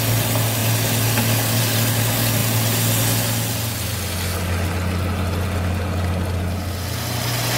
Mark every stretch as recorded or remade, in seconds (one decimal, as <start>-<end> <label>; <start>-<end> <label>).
0.0-7.6 recorded